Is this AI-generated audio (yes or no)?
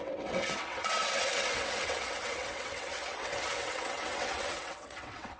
yes